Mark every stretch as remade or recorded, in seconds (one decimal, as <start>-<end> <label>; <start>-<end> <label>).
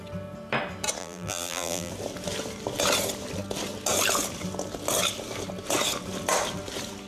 0.0-1.0 recorded; 1.0-1.9 remade; 1.9-7.1 recorded